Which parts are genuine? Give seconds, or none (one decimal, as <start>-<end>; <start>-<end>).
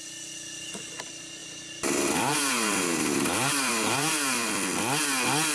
0.0-1.4; 4.5-5.5